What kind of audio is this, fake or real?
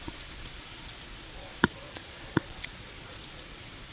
fake